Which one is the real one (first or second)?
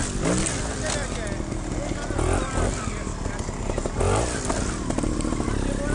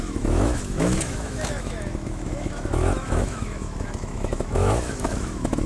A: first